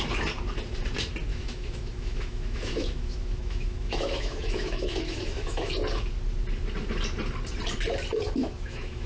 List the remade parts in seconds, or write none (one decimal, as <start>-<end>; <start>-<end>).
1.3-5.7; 8.4-9.1